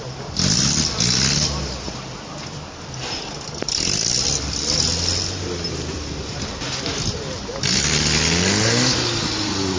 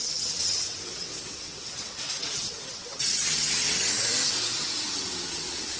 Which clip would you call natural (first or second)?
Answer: first